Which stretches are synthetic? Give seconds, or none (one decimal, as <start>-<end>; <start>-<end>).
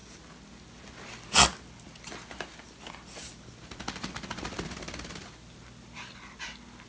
none